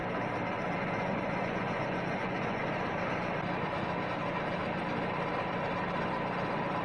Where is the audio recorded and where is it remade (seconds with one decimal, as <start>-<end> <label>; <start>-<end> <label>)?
0.0-0.8 recorded; 0.8-2.6 remade; 2.6-6.8 recorded